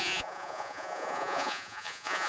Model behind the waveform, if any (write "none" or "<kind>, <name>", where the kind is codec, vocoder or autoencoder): vocoder, Vocos